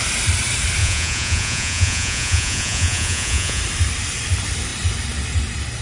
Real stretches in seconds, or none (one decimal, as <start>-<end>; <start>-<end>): 0.0-0.8; 3.6-5.8